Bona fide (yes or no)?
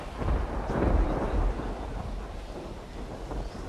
yes